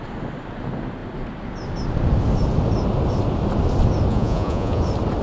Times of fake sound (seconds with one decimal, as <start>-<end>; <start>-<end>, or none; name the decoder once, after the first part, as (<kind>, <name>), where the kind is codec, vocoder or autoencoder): 4.1-4.8 (vocoder, Vocos)

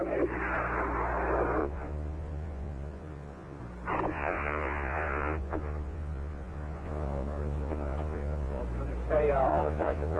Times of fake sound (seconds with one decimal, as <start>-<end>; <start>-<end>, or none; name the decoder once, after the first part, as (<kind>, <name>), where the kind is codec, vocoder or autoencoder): 1.6-3.6 (vocoder, Vocos); 4.1-8.6; 9.5-10.2

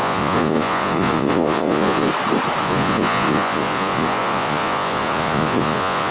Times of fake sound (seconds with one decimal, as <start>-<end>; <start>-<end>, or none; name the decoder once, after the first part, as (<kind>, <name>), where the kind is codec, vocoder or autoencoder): 0.0-2.1 (vocoder, Vocos); 2.6-6.1

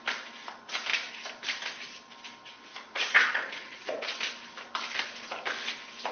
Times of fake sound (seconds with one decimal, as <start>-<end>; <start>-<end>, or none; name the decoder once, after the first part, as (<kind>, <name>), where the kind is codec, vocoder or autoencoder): 2.7-4.0 (vocoder, Vocos)

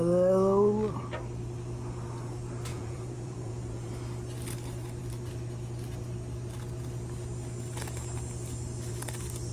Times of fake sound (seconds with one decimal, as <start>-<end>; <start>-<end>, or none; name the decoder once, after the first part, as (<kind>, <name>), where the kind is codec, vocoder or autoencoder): 2.7-3.9 (vocoder, Vocos)

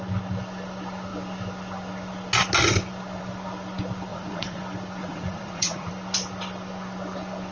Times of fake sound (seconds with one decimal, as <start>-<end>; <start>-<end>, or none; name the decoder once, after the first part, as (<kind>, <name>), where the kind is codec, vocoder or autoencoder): 4.1-4.6 (vocoder, Vocos); 5.0-5.9